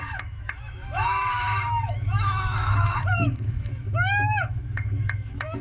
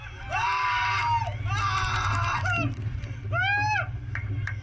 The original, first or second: second